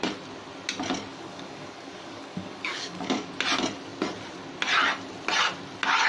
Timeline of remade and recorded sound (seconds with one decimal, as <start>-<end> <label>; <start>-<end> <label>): 0.0-1.1 recorded; 1.1-3.3 remade; 3.3-6.1 recorded